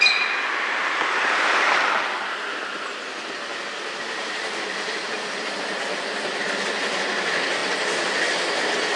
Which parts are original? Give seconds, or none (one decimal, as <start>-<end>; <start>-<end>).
0.0-9.0